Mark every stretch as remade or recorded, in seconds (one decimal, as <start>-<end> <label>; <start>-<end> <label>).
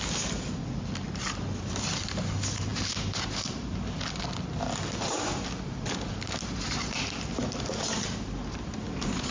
0.0-9.3 recorded